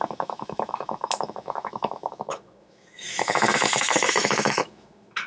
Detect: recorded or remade remade